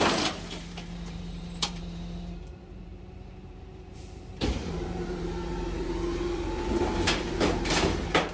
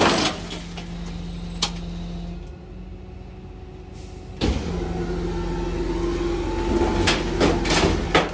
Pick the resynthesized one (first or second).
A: first